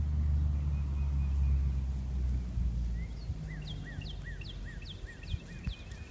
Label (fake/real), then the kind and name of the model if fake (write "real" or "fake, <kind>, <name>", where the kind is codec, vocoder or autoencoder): real